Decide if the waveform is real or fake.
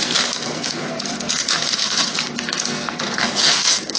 fake